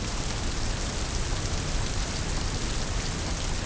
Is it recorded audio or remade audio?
recorded